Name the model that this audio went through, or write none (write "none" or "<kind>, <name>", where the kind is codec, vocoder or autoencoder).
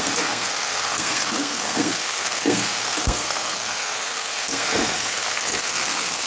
codec, SNAC